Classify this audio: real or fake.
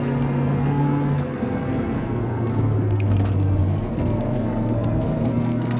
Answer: fake